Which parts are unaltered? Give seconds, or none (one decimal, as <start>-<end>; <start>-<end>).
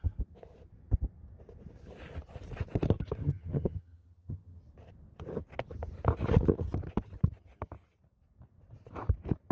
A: 0.0-3.2; 4.6-9.5